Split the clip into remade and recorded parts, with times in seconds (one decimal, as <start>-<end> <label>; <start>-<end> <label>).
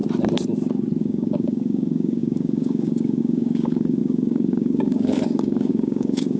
0.0-1.0 recorded; 1.0-6.4 remade